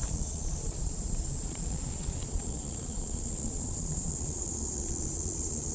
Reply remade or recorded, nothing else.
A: remade